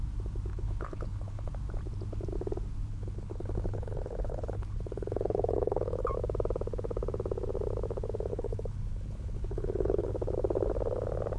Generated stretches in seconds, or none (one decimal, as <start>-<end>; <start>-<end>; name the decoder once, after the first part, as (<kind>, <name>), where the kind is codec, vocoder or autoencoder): 0.5-1.5 (codec, HILCodec); 2.9-6.1; 8.3-10.1